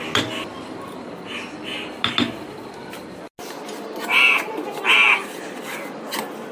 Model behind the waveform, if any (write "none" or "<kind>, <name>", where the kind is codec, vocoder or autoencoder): none